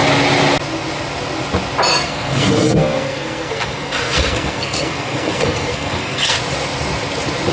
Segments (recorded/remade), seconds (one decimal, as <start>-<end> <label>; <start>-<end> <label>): 0.0-1.9 recorded; 1.9-6.4 remade; 6.4-7.5 recorded